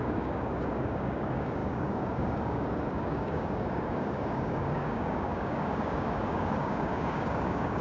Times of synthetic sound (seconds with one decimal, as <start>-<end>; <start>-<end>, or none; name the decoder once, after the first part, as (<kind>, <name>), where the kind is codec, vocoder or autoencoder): 0.0-7.8 (codec, DAC)